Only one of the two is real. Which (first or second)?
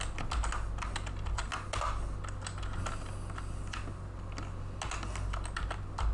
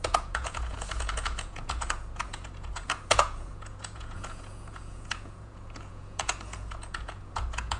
first